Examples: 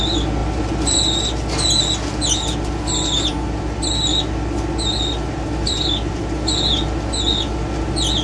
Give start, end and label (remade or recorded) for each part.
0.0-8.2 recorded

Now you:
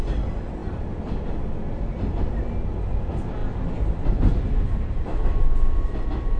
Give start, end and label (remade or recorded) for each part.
0.0-6.4 recorded

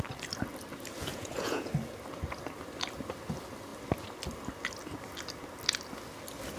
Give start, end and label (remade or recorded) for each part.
0.0-1.1 recorded; 1.1-1.7 remade; 1.7-6.6 recorded

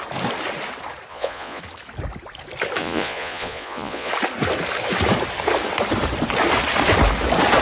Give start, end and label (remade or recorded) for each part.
0.0-1.1 recorded; 1.1-1.6 remade; 1.6-2.8 recorded; 2.8-4.1 remade; 4.1-7.6 recorded

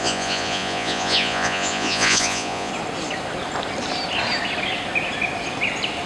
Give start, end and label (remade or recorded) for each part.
0.0-2.7 remade; 2.7-6.1 recorded

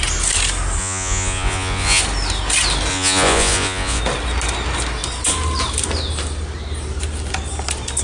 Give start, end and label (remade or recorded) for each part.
0.0-0.8 recorded; 0.8-2.0 remade; 2.0-2.9 recorded; 2.9-4.0 remade; 4.0-8.0 recorded

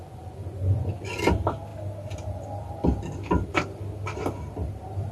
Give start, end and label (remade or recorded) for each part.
0.0-1.1 remade; 1.1-5.1 recorded

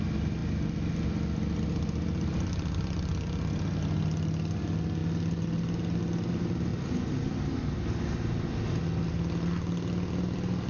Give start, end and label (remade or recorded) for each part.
0.0-10.7 recorded